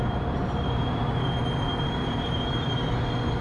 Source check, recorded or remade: remade